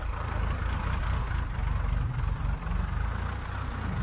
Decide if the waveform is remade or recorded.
recorded